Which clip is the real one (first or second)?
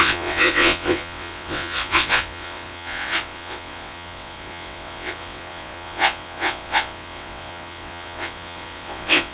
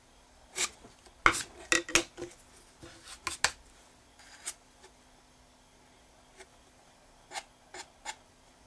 second